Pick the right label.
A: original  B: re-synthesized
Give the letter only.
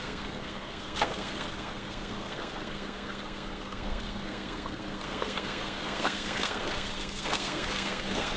B